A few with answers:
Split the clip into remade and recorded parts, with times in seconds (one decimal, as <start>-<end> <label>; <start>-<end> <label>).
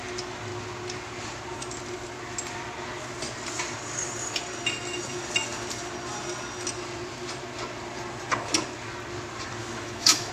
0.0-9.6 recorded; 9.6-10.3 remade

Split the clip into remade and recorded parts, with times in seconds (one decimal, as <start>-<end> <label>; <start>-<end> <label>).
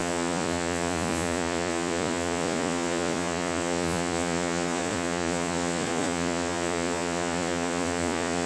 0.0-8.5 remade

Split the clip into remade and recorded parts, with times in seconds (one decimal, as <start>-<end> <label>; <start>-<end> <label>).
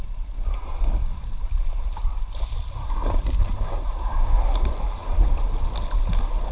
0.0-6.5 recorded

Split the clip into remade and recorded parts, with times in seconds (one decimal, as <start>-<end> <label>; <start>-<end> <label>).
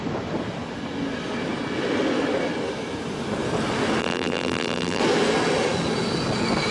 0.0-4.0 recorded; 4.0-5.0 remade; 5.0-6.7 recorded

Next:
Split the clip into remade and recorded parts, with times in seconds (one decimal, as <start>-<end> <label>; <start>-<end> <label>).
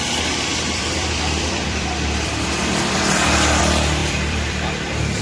0.0-0.5 recorded; 0.5-3.6 remade; 3.6-4.0 recorded; 4.0-4.6 remade; 4.6-5.2 recorded